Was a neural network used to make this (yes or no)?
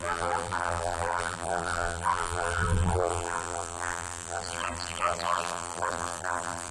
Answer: yes